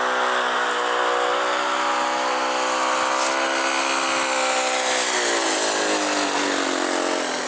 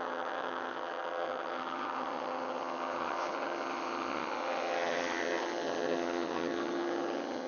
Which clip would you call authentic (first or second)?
first